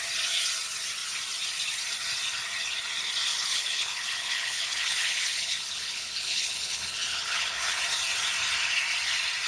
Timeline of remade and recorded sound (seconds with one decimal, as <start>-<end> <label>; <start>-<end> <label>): 0.0-3.3 recorded; 3.3-7.8 remade; 7.8-9.5 recorded